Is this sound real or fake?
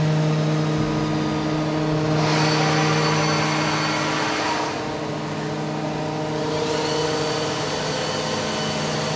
real